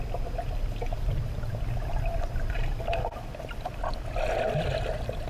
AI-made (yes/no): no